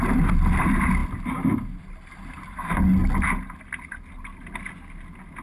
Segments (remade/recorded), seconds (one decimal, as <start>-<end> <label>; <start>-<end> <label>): 0.0-5.4 recorded